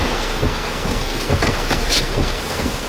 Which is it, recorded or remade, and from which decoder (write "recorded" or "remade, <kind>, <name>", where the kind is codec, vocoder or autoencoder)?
remade, codec, SNAC